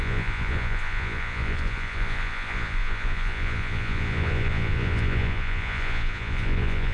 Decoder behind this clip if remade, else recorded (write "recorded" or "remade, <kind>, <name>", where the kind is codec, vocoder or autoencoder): remade, vocoder, Vocos